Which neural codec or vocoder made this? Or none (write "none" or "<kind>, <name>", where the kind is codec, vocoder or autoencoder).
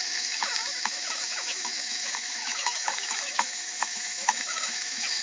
autoencoder, DAC-VAE